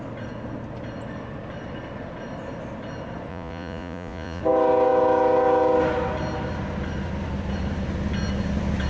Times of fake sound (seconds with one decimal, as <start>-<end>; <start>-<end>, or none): 3.3-4.4